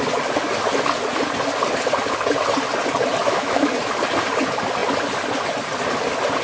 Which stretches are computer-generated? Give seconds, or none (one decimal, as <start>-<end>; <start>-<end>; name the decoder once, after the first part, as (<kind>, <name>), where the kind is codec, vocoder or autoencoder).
3.2-3.7 (autoencoder, DAC-VAE)